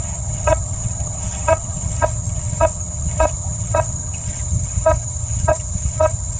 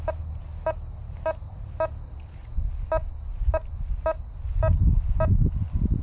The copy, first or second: first